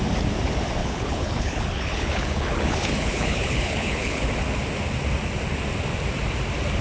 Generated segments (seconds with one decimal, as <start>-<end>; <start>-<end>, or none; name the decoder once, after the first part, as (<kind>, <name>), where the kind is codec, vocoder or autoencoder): 0.8-4.3 (codec, HILCodec)

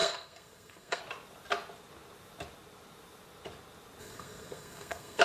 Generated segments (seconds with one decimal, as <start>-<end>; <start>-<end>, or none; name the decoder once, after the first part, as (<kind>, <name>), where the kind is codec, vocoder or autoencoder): 0.0-1.0 (codec, SNAC); 4.0-5.2

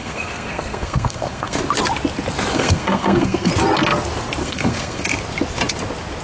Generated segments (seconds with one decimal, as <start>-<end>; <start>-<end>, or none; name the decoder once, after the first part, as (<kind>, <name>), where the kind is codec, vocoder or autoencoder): 0.0-1.6 (codec, SNAC); 2.5-3.5; 4.4-5.0

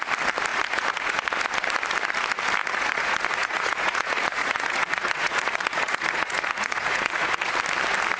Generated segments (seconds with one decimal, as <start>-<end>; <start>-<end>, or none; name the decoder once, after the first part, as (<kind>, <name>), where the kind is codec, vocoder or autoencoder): 0.5-1.3 (vocoder, Vocos); 2.6-7.5

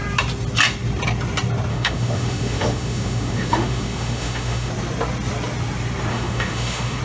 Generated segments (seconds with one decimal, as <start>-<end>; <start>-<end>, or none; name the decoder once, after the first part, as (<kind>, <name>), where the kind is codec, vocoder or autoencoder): 1.7-4.7 (autoencoder, DAC-VAE); 6.1-7.0

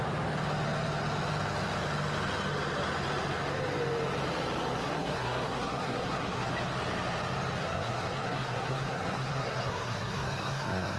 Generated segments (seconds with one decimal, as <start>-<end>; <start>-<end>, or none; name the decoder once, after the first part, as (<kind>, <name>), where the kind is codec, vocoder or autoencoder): 4.8-6.5 (codec, SNAC); 7.6-11.0

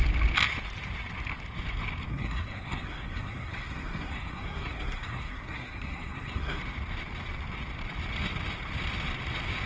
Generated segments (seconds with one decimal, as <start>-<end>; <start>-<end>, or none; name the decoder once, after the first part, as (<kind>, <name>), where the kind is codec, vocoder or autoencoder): 2.1-6.6 (codec, SNAC)